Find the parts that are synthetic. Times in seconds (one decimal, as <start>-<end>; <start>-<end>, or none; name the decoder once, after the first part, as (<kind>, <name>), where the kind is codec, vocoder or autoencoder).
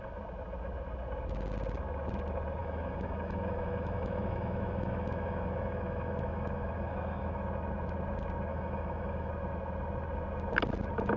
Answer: 2.6-7.4 (autoencoder, DAC-VAE); 8.5-9.3